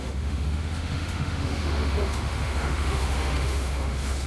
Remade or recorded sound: remade